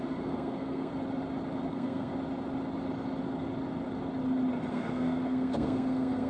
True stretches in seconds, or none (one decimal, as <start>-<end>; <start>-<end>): 0.9-1.7; 2.1-4.7